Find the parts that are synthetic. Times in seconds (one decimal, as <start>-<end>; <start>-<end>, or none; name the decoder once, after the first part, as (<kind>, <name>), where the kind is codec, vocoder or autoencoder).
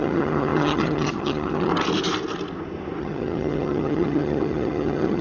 0.0-1.7 (vocoder, HiFi-GAN); 3.0-5.2